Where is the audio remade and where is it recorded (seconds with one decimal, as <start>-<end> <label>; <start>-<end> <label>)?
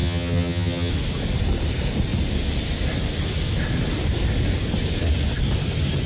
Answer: 0.0-0.9 remade; 0.9-6.1 recorded